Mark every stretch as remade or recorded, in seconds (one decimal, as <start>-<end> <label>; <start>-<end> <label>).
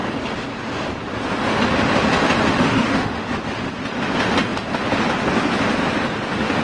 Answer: 0.0-2.5 recorded; 2.5-3.3 remade; 3.3-6.6 recorded